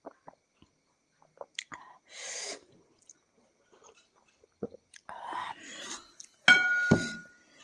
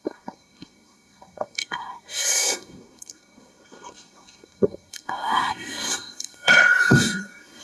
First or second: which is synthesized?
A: second